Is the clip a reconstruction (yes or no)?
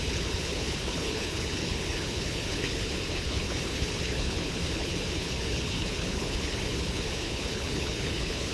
yes